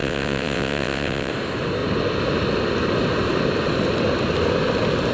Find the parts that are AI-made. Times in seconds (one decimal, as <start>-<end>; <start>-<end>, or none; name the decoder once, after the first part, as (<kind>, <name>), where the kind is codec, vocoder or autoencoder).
0.0-1.3 (vocoder, WaveNeXt)